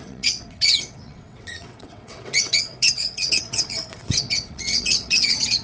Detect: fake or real fake